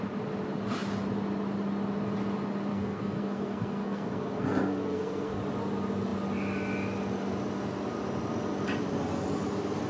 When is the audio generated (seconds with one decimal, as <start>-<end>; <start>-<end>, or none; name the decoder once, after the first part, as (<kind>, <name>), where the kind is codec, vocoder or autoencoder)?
2.7-5.4 (codec, SNAC)